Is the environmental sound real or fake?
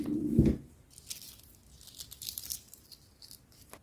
real